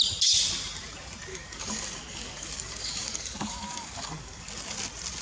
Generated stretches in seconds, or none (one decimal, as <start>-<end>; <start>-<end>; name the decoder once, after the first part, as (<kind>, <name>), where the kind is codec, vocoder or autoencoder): 1.3-4.4 (codec, DAC)